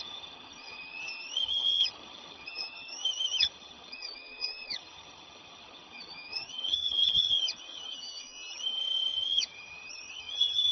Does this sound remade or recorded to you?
remade